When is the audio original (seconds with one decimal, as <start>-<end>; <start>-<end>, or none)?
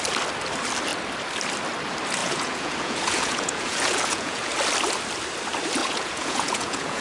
0.0-2.2; 4.5-5.8